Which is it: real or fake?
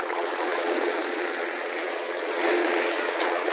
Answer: fake